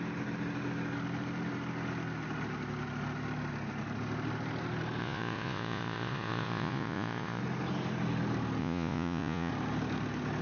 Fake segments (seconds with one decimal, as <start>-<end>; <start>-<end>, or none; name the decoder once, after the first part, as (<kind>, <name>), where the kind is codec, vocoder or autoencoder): 5.0-7.4 (vocoder, Vocos); 8.6-9.5